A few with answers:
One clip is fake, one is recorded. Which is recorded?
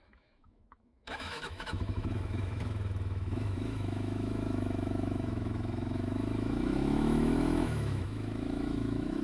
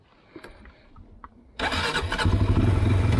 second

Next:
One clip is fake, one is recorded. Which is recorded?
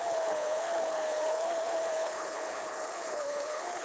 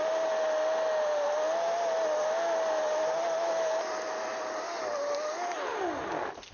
second